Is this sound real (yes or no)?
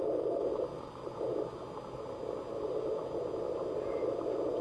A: yes